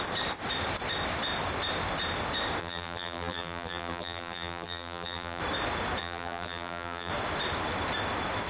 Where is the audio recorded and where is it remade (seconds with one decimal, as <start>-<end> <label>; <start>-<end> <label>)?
0.0-2.6 recorded; 2.6-5.4 remade; 5.4-6.0 recorded; 6.0-7.1 remade; 7.1-8.5 recorded